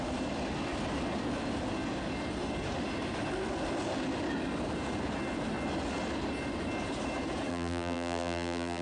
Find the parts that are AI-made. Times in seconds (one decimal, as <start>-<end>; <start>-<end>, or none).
7.5-8.8